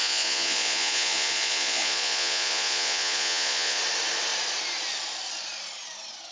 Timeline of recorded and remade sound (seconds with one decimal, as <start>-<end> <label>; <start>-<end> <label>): 0.0-3.8 remade; 3.8-6.3 recorded

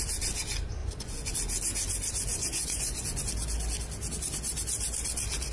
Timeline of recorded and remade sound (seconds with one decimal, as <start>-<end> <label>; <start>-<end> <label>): 0.0-0.8 recorded; 0.8-1.3 remade; 1.3-2.3 recorded; 2.3-3.3 remade; 3.3-5.5 recorded

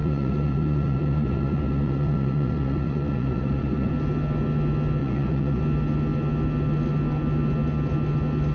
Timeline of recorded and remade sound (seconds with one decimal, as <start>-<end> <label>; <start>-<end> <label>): 0.0-3.9 remade; 3.9-5.0 recorded; 5.0-5.6 remade; 5.6-8.5 recorded